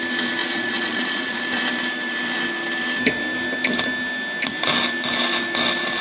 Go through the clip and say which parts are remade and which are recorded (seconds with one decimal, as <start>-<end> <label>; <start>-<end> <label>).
0.0-0.4 recorded; 0.4-1.4 remade; 1.4-6.0 recorded